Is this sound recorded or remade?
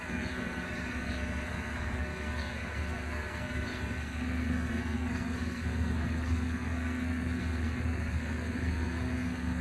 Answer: remade